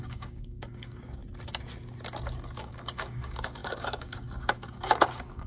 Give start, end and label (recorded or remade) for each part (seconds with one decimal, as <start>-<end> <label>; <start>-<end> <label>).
0.0-1.2 remade; 1.2-2.6 recorded; 2.6-5.5 remade